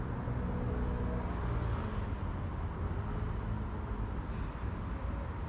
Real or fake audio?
real